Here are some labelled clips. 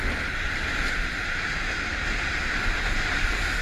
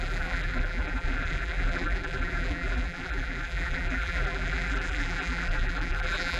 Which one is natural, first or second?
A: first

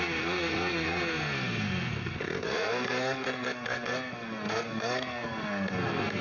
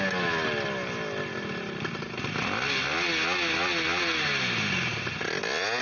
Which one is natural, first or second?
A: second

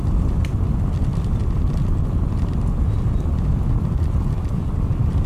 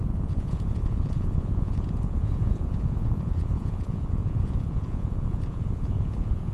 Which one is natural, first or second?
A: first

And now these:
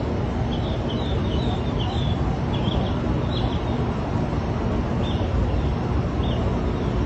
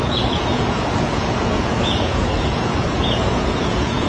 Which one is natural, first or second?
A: first